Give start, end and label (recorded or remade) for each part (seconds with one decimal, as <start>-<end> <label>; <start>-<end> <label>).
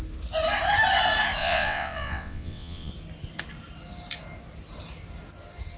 0.0-1.4 recorded; 1.4-2.9 remade; 2.9-5.8 recorded